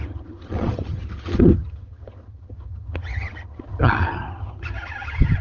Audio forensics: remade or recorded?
remade